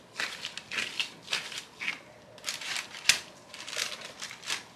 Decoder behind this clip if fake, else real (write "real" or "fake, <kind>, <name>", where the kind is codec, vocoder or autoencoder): real